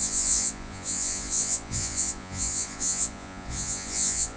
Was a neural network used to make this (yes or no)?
yes